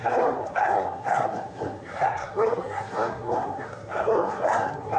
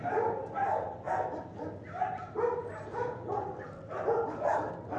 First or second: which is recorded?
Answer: second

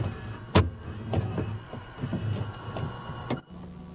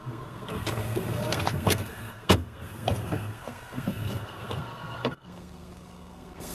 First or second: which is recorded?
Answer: first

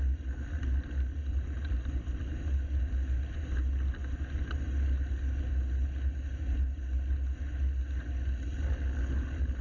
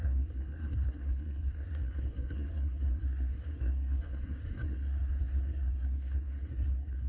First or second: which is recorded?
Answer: first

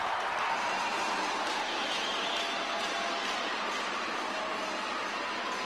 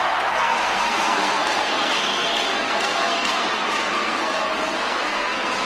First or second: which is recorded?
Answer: first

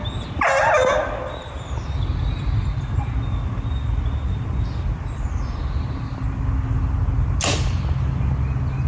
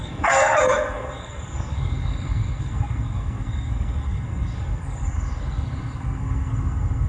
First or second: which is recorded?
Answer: first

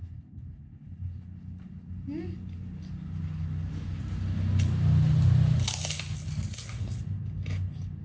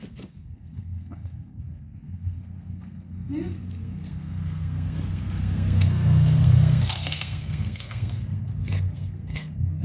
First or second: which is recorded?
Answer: first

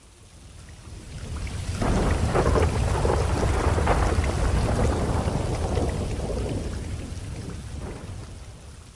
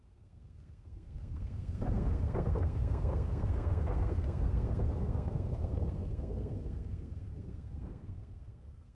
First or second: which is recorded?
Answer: first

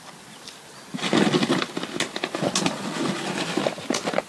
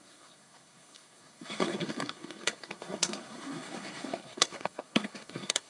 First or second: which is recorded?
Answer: first